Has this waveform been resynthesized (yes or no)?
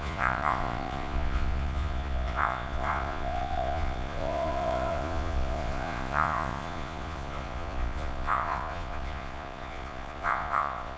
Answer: yes